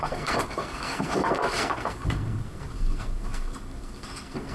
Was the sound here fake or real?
fake